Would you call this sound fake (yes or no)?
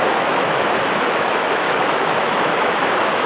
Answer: yes